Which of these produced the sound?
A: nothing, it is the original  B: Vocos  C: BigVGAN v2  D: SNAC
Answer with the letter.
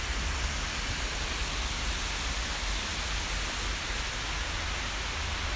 A